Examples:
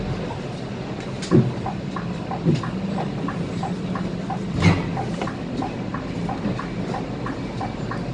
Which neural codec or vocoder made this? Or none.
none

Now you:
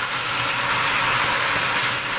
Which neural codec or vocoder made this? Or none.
none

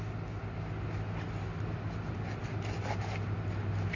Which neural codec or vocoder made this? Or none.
none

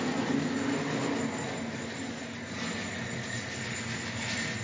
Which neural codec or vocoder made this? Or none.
none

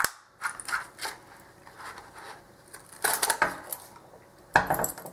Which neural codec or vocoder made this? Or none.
none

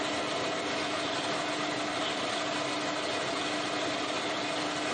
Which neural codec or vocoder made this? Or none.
none